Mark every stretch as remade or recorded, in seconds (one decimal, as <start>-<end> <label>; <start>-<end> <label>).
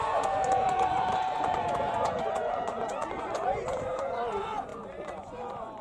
0.0-5.8 remade